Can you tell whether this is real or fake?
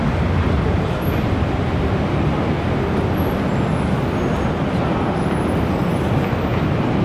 real